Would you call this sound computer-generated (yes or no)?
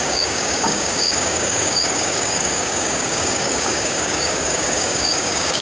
yes